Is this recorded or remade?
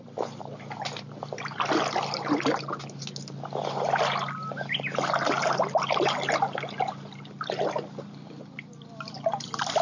recorded